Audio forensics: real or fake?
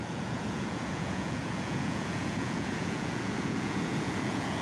fake